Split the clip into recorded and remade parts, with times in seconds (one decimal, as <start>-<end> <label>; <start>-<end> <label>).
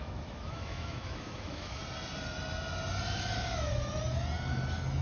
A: 0.0-1.8 remade; 1.8-5.0 recorded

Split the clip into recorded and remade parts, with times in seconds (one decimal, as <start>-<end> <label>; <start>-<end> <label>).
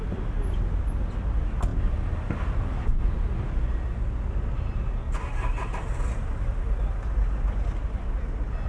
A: 0.0-8.7 recorded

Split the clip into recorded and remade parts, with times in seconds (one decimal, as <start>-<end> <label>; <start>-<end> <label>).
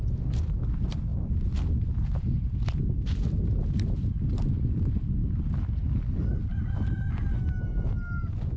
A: 0.0-8.6 recorded